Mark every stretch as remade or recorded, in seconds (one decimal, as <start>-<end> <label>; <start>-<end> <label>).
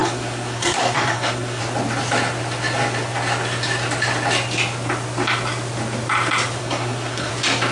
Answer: 0.0-1.6 remade; 1.6-6.6 recorded; 6.6-7.3 remade; 7.3-7.7 recorded